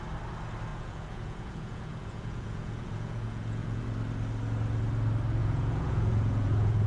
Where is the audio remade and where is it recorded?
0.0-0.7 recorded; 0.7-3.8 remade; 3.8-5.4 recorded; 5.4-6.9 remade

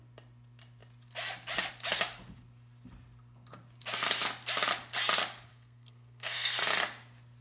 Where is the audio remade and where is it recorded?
0.0-5.5 recorded; 5.5-6.6 remade; 6.6-7.4 recorded